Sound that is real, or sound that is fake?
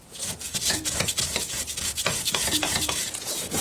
fake